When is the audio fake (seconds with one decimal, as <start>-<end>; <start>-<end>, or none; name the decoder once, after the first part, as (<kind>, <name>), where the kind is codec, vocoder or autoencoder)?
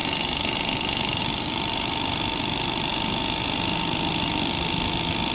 0.0-2.9 (vocoder, BigVGAN v2); 4.1-5.3